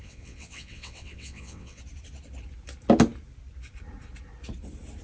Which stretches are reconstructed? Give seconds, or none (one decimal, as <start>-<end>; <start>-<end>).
0.0-1.8